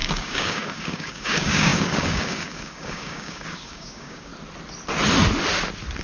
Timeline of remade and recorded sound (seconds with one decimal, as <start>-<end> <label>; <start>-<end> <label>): 0.0-4.3 remade; 4.3-6.0 recorded